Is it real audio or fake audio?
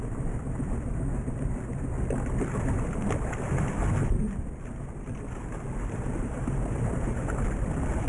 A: real